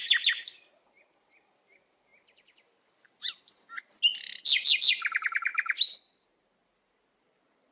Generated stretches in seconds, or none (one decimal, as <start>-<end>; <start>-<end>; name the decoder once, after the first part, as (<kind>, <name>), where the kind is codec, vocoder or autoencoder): none